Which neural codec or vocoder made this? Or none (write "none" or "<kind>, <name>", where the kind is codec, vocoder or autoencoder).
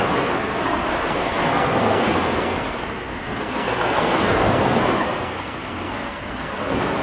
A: codec, SNAC